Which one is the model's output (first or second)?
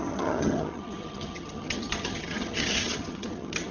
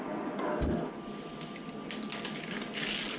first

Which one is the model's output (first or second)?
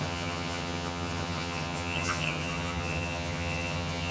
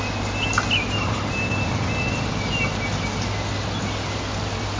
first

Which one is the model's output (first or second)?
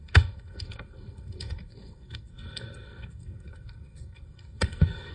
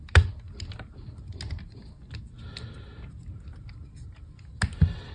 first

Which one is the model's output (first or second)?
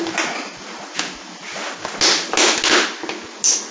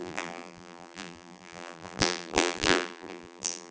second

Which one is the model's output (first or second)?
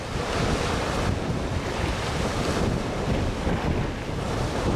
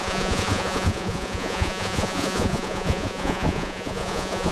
second